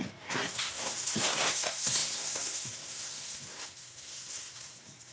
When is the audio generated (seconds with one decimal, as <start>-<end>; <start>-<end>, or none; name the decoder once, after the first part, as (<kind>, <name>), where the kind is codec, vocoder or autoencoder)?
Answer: 0.0-5.1 (codec, SNAC)